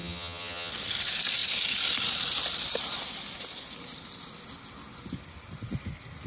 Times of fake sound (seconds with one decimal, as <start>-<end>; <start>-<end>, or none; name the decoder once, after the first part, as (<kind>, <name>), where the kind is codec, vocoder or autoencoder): 0.0-0.7 (vocoder, HiFi-GAN)

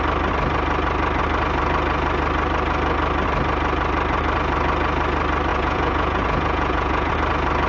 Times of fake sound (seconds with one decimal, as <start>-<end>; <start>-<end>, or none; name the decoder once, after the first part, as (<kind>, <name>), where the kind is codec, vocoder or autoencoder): 5.5-7.1 (vocoder, Vocos)

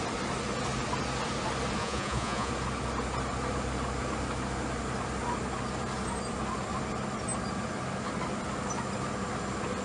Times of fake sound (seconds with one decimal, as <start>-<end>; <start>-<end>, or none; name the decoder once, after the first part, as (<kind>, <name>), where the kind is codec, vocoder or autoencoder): 1.8-2.5 (vocoder, Vocos)

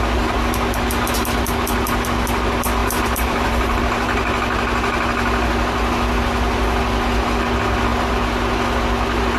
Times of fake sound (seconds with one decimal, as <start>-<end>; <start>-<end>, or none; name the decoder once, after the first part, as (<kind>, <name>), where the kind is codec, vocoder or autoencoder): 2.8-3.8 (vocoder, BigVGAN v2)

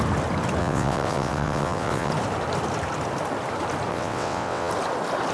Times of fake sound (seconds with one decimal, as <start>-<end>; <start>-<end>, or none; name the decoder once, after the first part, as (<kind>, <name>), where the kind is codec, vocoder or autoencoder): 0.6-2.1 (vocoder, WaveNeXt); 3.9-4.7

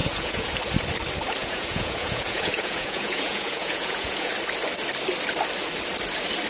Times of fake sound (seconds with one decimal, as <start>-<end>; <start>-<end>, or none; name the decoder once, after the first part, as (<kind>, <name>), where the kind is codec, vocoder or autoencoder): 0.0-0.5 (vocoder, Vocos); 1.4-4.3

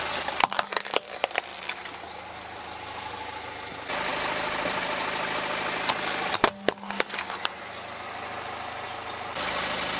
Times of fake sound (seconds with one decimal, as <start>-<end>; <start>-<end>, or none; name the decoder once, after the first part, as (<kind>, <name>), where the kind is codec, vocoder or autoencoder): none

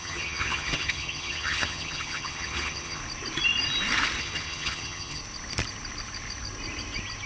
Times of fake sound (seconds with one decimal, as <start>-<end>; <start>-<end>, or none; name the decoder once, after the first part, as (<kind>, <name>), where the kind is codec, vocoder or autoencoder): 0.0-3.0 (vocoder, HiFi-GAN); 4.2-5.2